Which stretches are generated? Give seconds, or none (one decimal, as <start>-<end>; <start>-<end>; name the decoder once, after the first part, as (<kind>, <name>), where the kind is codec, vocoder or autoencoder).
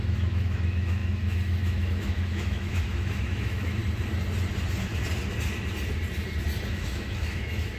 0.0-3.8 (autoencoder, DAC-VAE); 6.7-7.8